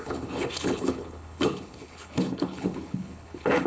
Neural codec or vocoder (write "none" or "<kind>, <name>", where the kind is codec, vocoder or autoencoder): codec, HILCodec